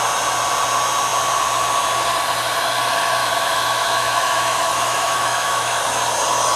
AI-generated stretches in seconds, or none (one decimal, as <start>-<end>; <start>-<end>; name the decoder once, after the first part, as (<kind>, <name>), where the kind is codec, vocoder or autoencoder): 3.2-5.8 (autoencoder, DAC-VAE)